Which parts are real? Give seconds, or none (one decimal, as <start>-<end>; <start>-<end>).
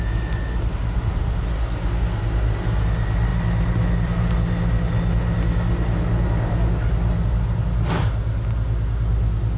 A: 0.0-9.6